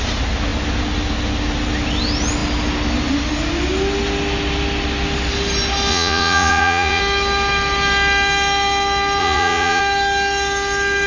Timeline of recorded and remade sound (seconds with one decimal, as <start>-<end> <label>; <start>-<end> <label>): 0.0-5.9 recorded; 5.9-7.0 remade; 7.0-9.2 recorded; 9.2-9.8 remade; 9.8-11.1 recorded